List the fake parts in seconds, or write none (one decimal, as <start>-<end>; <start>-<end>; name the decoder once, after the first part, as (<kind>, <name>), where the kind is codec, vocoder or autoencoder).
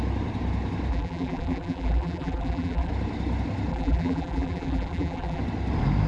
0.9-2.9 (vocoder, BigVGAN v2); 3.7-5.4